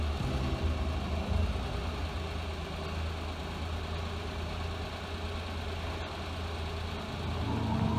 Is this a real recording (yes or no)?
yes